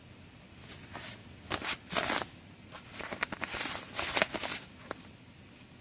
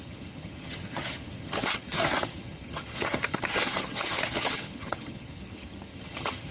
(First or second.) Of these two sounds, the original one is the first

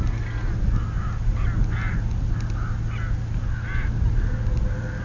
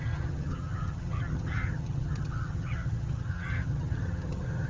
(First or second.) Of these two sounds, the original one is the first